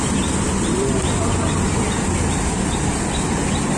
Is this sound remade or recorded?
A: recorded